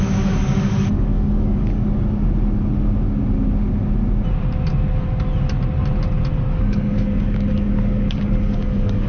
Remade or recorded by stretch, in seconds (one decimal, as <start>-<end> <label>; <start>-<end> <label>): 0.0-1.8 remade; 1.8-6.5 recorded; 6.5-9.1 remade